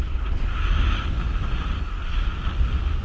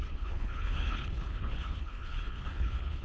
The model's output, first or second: second